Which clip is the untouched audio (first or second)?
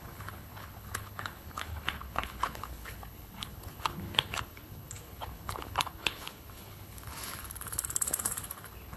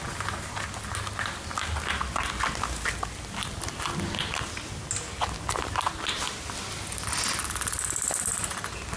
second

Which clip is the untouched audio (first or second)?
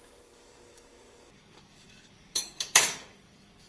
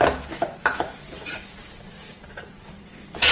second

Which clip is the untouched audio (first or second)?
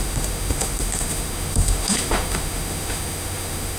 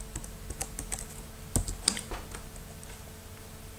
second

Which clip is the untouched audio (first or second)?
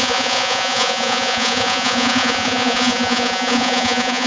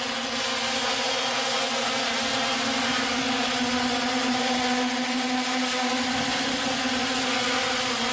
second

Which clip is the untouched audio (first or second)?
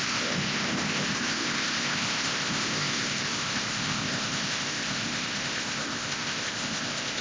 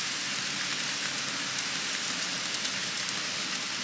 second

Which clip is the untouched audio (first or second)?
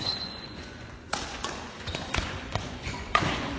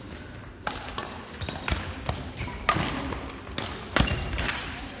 second